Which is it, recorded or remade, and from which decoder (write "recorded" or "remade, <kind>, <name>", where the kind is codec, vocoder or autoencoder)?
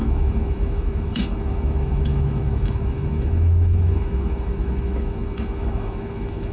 remade, autoencoder, DAC-VAE